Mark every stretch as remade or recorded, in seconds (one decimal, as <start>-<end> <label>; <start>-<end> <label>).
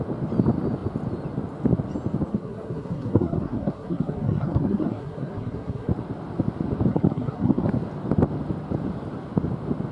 0.0-2.3 recorded; 2.3-5.9 remade; 5.9-6.9 recorded; 6.9-7.7 remade; 7.7-9.9 recorded